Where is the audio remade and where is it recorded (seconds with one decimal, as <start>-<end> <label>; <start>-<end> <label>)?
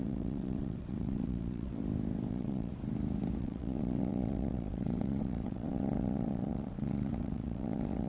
0.0-1.8 remade; 1.8-2.3 recorded; 2.3-2.7 remade; 2.7-3.4 recorded; 3.4-8.1 remade